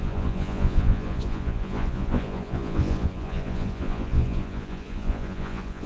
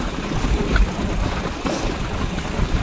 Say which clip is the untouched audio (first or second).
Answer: second